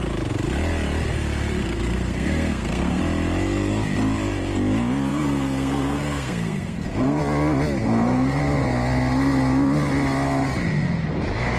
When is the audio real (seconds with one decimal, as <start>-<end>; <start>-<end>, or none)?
0.0-1.6; 3.0-5.1; 7.2-7.8; 8.4-11.6